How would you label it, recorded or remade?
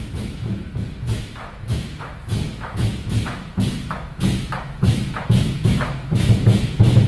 remade